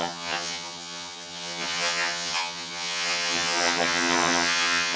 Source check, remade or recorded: remade